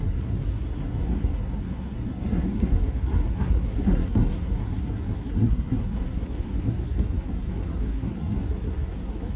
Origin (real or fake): fake